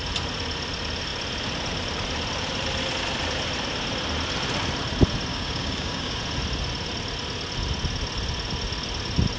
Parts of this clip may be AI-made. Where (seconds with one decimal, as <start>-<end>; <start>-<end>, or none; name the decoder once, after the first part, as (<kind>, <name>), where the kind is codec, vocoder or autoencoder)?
5.3-6.2 (codec, DAC)